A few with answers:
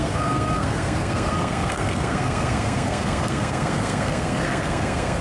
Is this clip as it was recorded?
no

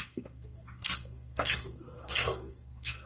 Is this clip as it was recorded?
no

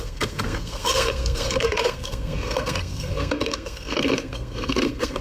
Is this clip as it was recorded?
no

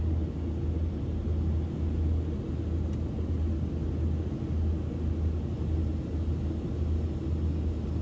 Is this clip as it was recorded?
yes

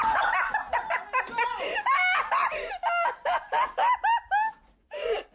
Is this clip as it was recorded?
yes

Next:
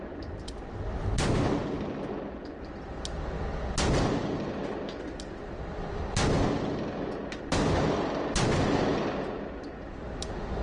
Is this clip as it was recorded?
yes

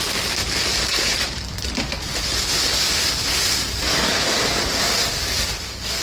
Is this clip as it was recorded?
yes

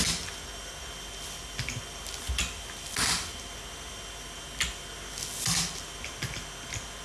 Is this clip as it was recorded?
yes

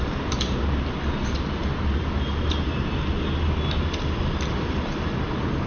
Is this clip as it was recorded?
yes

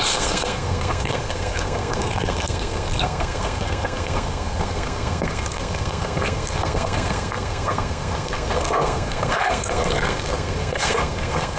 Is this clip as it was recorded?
no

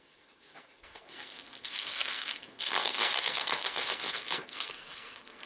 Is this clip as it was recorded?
no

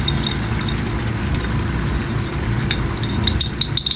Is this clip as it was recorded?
yes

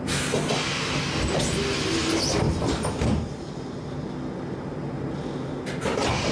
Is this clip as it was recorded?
yes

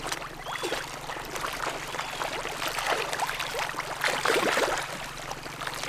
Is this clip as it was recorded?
yes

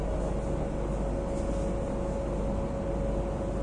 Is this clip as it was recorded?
yes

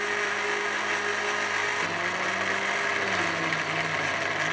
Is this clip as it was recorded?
yes